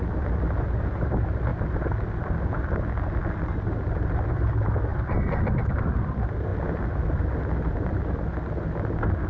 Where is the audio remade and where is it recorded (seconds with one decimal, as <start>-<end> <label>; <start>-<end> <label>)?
0.0-9.3 recorded